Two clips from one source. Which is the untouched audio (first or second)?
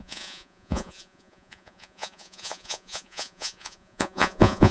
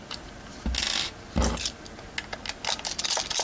second